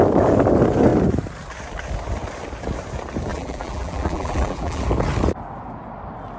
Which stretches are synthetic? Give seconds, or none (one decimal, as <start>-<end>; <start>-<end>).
3.3-4.8